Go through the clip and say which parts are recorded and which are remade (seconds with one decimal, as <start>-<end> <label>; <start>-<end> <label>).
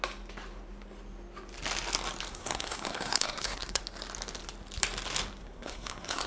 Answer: 0.0-2.3 recorded; 2.3-3.8 remade; 3.8-5.4 recorded; 5.4-6.3 remade